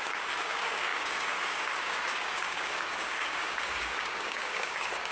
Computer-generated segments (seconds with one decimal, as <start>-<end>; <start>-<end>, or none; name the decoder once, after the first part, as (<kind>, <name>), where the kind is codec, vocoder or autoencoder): 0.0-5.1 (codec, DAC)